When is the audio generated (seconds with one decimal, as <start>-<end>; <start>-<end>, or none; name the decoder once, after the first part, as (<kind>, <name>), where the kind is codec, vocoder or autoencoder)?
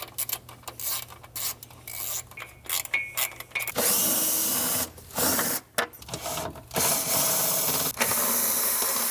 none